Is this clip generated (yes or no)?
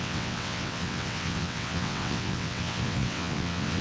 yes